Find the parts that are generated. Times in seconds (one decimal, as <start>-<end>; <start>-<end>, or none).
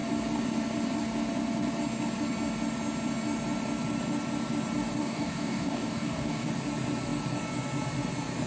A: 5.0-6.5